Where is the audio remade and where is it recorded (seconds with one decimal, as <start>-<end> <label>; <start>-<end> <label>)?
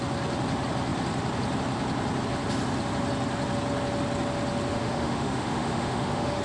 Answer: 0.0-4.7 recorded; 4.7-6.4 remade